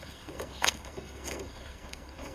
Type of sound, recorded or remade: remade